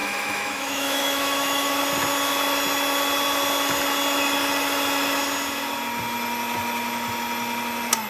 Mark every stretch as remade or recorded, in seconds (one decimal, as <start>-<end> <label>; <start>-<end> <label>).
0.0-1.8 remade; 1.8-8.1 recorded